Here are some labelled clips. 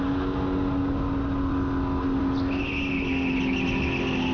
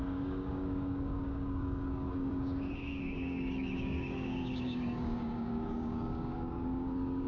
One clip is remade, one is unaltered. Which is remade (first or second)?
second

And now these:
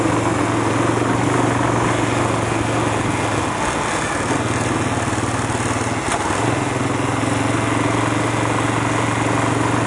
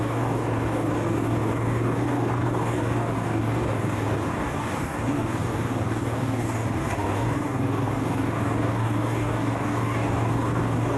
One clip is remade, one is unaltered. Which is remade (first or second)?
second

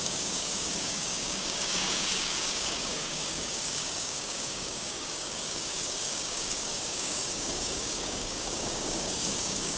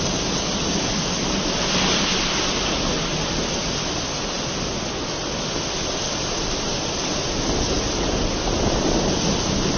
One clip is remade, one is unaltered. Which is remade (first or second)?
first